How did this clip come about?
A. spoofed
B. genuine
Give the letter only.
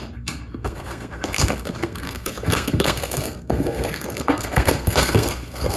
A